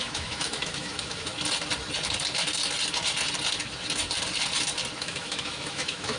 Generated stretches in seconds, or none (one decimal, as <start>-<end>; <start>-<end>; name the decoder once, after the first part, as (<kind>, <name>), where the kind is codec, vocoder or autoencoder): 0.0-1.3 (autoencoder, DAC-VAE); 5.0-6.2